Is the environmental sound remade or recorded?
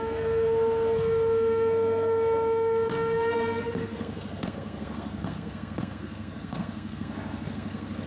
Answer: remade